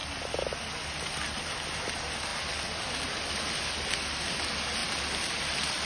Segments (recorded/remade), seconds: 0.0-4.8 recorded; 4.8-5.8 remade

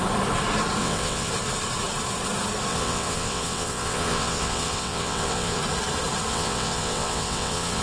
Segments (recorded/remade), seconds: 0.0-0.8 recorded; 0.8-1.3 remade; 1.3-2.7 recorded; 2.7-5.6 remade; 5.6-6.3 recorded; 6.3-7.8 remade

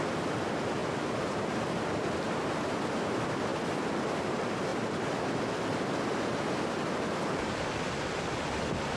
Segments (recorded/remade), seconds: 0.0-0.8 recorded; 0.8-2.4 remade; 2.4-4.7 recorded; 4.7-5.5 remade; 5.5-9.0 recorded

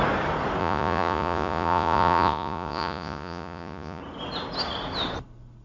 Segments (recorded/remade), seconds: 0.0-0.6 recorded; 0.6-4.0 remade; 4.0-5.6 recorded

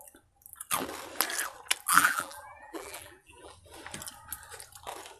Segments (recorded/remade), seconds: 0.0-1.9 recorded; 1.9-3.5 remade; 3.5-5.2 recorded

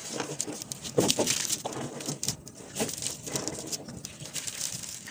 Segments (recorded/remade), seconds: 0.0-5.1 recorded